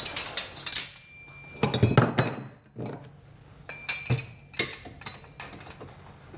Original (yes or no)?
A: yes